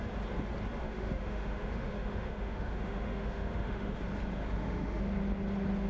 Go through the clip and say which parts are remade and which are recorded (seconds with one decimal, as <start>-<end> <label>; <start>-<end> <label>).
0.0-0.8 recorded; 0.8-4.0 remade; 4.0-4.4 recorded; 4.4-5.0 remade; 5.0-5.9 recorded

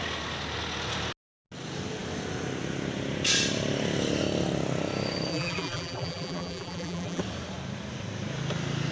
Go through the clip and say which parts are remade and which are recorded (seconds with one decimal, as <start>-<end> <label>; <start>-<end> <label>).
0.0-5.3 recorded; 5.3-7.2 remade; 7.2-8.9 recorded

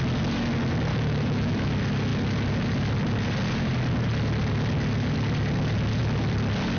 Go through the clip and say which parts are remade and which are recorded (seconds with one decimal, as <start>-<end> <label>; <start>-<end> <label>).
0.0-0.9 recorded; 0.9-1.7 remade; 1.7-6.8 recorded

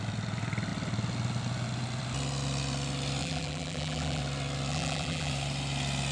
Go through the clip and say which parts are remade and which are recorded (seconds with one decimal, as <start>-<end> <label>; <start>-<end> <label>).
0.0-3.2 recorded; 3.2-4.2 remade; 4.2-4.7 recorded; 4.7-5.3 remade; 5.3-6.1 recorded